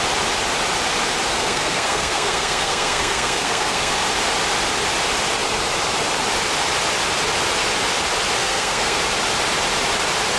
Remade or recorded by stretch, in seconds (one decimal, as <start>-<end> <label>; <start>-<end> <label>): 0.0-1.3 recorded; 1.3-3.9 remade; 3.9-8.4 recorded; 8.4-9.0 remade; 9.0-10.4 recorded